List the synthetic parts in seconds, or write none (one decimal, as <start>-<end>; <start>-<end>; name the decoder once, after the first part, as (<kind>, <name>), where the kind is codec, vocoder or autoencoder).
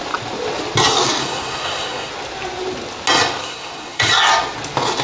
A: 1.2-2.1 (codec, SNAC); 3.4-4.1